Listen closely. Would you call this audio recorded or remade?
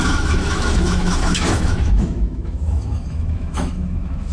remade